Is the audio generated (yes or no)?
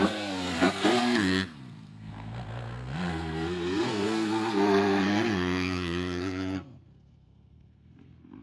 yes